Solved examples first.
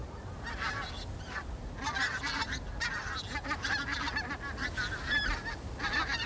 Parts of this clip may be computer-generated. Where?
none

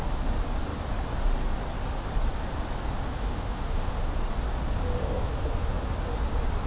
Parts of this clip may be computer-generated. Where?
3.1-4.1 (autoencoder, DAC-VAE); 5.0-5.9

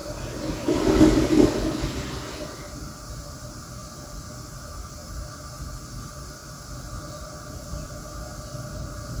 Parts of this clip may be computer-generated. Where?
6.4-8.0 (vocoder, BigVGAN v2)

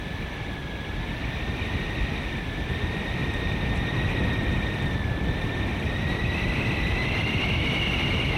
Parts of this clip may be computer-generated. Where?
3.2-4.8 (vocoder, BigVGAN v2)